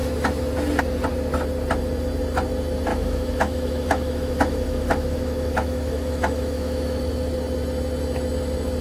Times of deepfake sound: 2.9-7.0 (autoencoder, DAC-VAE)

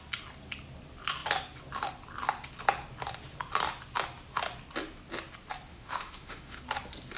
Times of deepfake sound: 5.7-6.6 (autoencoder, DAC-VAE)

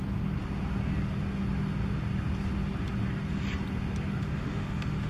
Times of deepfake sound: 4.2-5.1 (autoencoder, DAC-VAE)

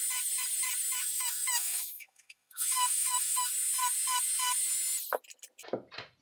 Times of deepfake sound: 1.0-3.5 (autoencoder, DAC-VAE)

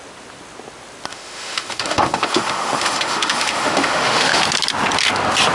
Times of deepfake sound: 1.1-4.4 (autoencoder, DAC-VAE)

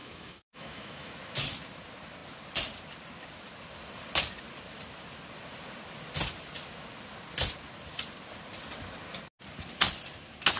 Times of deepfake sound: 0.0-1.1 (autoencoder, DAC-VAE)

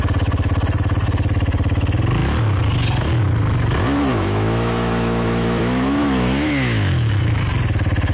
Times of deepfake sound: 4.1-7.4 (autoencoder, DAC-VAE)

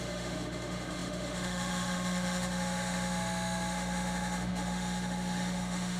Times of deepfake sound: 0.0-6.0 (autoencoder, DAC-VAE)